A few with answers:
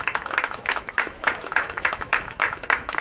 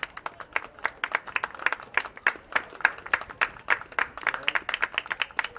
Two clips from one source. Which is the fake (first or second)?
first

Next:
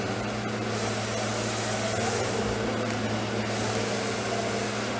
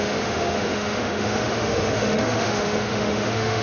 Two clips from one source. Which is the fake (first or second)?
second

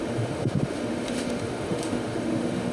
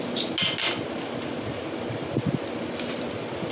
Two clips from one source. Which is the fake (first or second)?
first